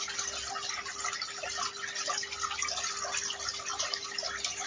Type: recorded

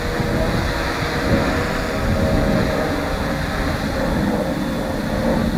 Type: recorded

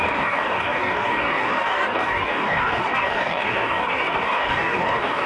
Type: remade